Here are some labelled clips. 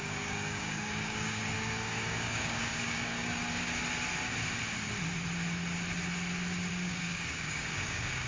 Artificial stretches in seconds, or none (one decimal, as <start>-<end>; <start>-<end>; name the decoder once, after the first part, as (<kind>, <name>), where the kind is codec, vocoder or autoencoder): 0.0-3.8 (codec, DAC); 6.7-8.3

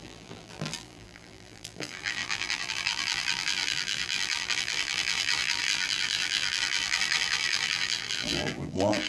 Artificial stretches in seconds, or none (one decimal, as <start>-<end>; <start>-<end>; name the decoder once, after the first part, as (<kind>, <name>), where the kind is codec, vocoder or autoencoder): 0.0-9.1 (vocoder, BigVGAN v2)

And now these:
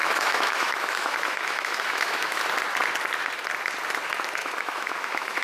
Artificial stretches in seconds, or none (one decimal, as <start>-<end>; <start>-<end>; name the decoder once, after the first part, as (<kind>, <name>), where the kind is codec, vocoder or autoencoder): 0.0-2.4 (autoencoder, DAC-VAE); 4.4-5.4

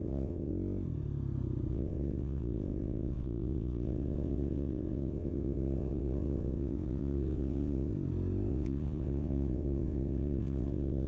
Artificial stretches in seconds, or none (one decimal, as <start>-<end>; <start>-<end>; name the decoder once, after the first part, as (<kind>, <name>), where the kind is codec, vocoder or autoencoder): 0.0-0.5 (vocoder, WaveNeXt); 1.7-7.9; 8.5-11.1

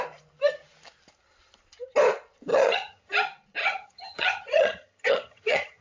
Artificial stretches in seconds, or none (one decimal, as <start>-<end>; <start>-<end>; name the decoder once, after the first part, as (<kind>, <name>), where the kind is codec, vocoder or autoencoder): 2.5-3.1 (vocoder, HiFi-GAN); 3.6-5.8

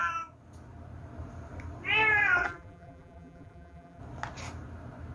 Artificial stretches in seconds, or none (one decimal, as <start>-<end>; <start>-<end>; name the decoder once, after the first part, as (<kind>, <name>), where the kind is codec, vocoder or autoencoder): 2.4-4.0 (vocoder, BigVGAN v2)